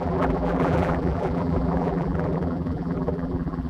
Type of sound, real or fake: fake